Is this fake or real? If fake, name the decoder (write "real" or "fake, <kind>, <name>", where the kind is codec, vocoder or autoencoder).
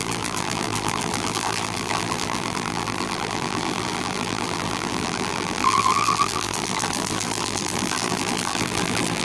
fake, vocoder, BigVGAN v2